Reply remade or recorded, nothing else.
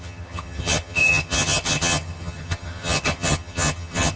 remade